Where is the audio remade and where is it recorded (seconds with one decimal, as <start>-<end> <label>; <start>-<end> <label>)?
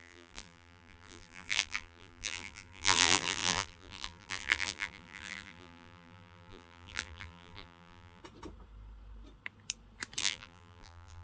0.0-8.2 remade; 8.2-10.2 recorded; 10.2-11.2 remade